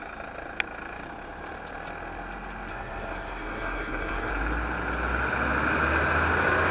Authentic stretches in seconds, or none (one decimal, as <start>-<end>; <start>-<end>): 0.0-2.7; 4.3-6.7

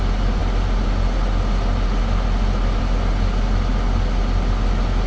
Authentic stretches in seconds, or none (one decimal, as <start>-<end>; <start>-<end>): 0.0-5.1

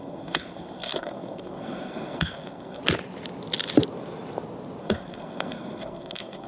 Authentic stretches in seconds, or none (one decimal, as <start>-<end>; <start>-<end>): 2.8-4.8

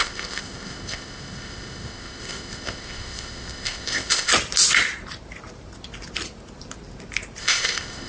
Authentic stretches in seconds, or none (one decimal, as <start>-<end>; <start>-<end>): 4.3-7.4

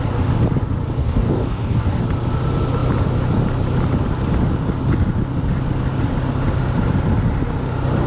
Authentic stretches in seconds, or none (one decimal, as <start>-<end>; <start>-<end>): 0.0-1.0; 2.0-8.1

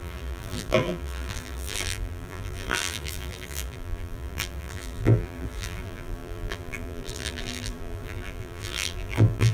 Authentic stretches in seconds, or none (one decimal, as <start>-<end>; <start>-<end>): none

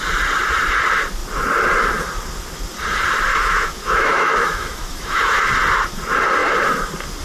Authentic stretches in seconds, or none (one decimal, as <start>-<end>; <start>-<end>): 0.0-3.3; 5.5-7.2